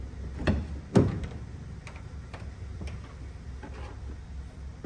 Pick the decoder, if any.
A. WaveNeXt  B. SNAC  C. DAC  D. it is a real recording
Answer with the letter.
D